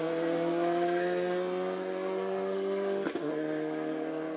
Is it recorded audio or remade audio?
remade